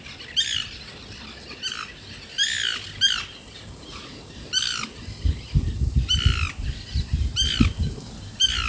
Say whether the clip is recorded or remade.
recorded